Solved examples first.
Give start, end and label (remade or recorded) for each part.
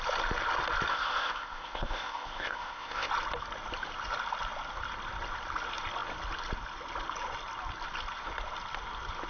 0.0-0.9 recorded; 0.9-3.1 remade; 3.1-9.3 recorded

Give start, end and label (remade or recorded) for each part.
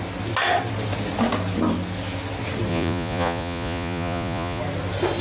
0.0-2.7 recorded; 2.7-4.6 remade; 4.6-5.2 recorded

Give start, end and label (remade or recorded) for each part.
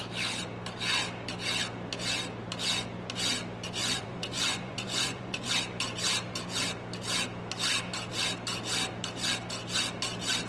0.0-3.8 recorded; 3.8-5.5 remade; 5.5-10.5 recorded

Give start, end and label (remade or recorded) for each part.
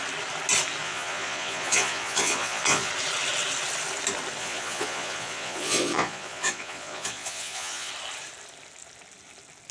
0.0-0.8 recorded; 0.8-2.9 remade; 2.9-4.4 recorded; 4.4-7.9 remade; 7.9-9.7 recorded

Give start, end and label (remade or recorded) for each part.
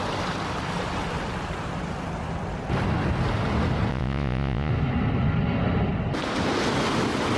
0.0-3.9 recorded; 3.9-4.7 remade; 4.7-7.4 recorded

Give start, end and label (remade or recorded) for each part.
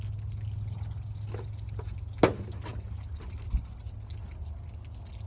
0.0-5.3 recorded